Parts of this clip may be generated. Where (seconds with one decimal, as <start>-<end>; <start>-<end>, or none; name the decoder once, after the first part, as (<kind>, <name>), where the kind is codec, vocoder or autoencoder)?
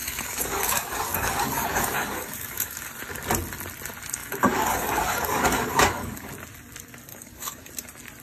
0.0-2.9 (codec, DAC); 4.2-6.3; 7.1-7.7